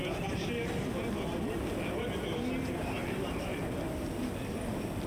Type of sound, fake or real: real